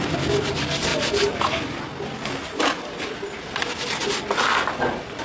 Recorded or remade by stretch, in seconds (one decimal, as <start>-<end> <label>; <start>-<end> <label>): 0.0-5.2 recorded